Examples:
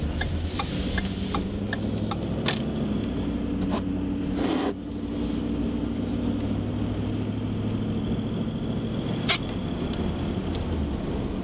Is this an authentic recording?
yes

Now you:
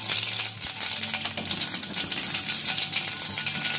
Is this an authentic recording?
yes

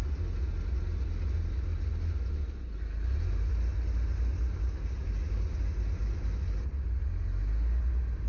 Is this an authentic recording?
yes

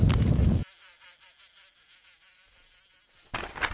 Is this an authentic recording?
yes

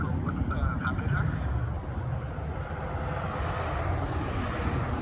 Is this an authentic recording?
yes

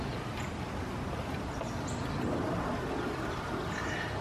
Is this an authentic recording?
yes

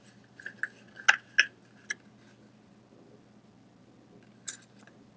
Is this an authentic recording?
yes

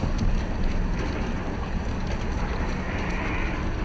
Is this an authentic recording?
yes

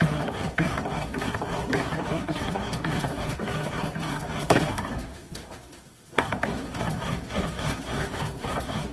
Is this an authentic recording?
no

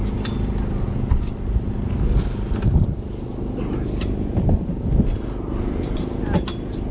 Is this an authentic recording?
yes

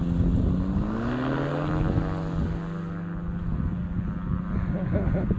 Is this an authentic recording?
yes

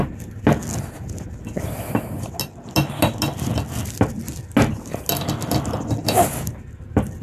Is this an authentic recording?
yes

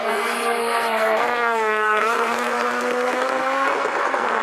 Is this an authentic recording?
no